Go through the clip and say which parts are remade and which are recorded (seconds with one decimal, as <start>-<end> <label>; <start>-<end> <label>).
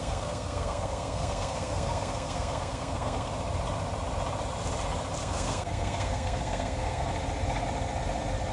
0.0-3.3 remade; 3.3-5.2 recorded; 5.2-7.1 remade; 7.1-8.5 recorded